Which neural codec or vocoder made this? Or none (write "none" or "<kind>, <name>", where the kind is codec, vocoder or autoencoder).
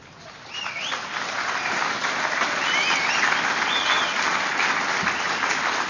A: none